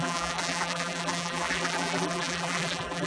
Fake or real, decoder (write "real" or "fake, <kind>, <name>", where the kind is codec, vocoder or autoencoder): fake, vocoder, BigVGAN v2